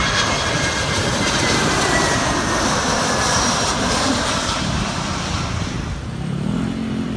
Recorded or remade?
remade